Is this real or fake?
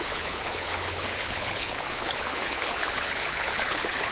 fake